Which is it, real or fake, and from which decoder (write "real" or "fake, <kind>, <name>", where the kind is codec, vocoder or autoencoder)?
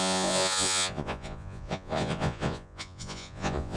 fake, vocoder, Vocos